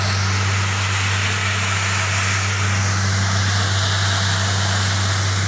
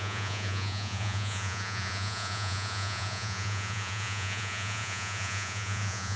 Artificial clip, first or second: second